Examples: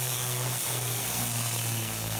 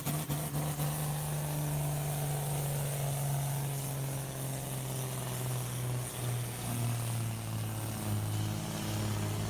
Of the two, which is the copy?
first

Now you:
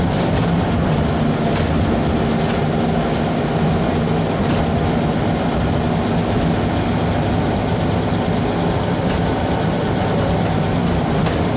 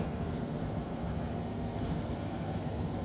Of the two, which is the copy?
second